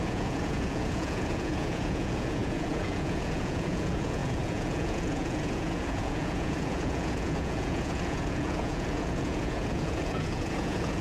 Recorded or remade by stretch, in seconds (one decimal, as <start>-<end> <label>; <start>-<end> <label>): 0.0-11.0 remade